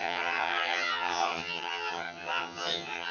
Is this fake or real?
fake